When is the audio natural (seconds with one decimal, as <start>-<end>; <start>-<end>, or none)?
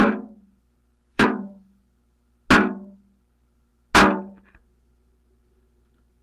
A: 0.0-1.1; 1.8-6.2